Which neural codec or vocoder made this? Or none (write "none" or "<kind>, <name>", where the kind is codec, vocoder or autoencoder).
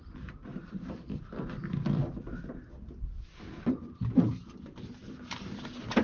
none